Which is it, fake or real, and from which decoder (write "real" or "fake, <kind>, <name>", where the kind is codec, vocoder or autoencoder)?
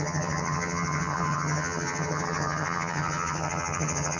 fake, vocoder, HiFi-GAN